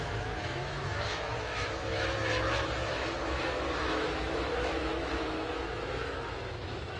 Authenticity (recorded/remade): remade